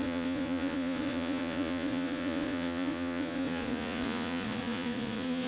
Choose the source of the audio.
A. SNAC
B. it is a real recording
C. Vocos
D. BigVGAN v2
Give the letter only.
C